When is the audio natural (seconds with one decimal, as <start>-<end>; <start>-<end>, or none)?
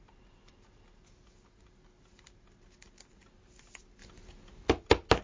0.0-5.2